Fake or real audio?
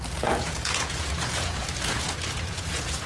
fake